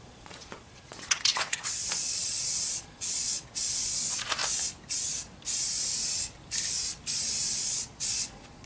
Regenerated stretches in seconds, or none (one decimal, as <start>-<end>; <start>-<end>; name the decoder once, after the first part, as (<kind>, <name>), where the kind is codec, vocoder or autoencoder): 0.0-4.4 (vocoder, Vocos); 7.6-8.7